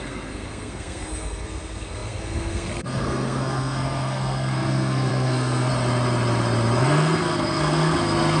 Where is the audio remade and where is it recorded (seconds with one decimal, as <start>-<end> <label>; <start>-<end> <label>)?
0.0-5.7 remade; 5.7-6.8 recorded; 6.8-8.4 remade